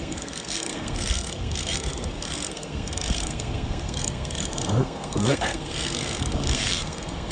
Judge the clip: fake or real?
fake